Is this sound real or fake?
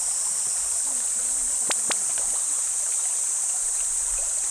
real